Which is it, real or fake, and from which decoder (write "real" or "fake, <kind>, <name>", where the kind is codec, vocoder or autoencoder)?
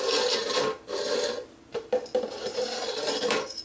real